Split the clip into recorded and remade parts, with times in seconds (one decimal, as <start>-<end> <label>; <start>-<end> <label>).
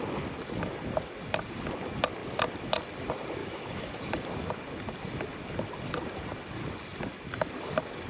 0.0-3.4 recorded; 3.4-4.0 remade; 4.0-8.1 recorded